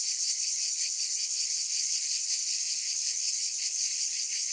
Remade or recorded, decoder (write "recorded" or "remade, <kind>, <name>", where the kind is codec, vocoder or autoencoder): remade, codec, HILCodec